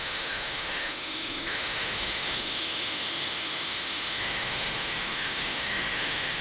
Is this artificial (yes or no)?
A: yes